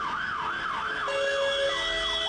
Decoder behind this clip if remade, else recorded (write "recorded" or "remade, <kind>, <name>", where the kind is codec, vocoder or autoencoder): recorded